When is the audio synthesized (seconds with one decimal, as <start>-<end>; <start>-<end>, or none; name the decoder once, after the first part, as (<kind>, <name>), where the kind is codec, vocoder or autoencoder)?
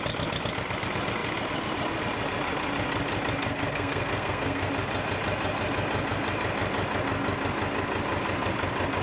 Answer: 3.4-4.7 (codec, SNAC)